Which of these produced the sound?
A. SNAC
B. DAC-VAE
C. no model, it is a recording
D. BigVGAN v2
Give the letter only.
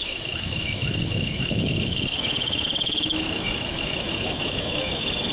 B